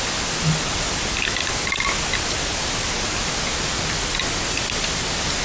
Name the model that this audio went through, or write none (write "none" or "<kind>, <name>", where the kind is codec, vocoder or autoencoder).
none